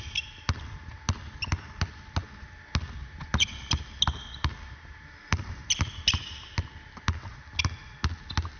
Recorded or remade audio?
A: recorded